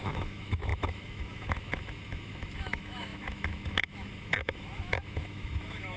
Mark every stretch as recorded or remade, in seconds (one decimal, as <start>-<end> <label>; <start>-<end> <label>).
0.0-6.0 remade